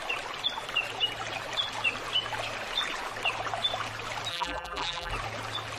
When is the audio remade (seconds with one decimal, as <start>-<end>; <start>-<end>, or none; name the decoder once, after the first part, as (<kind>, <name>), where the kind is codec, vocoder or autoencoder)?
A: 4.3-5.1 (vocoder, BigVGAN v2)